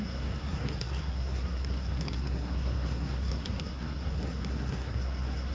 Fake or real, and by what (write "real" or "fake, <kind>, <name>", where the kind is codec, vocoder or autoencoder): fake, codec, SNAC